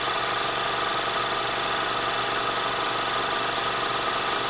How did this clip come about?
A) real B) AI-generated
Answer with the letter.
A